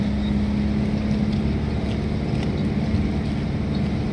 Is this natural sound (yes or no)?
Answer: yes